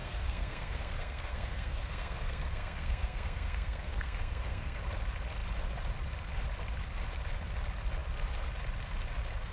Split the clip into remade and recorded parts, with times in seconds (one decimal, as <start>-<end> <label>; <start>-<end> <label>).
0.0-4.8 remade; 4.8-9.5 recorded